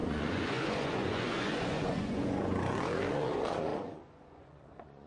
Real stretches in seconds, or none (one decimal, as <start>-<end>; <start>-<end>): none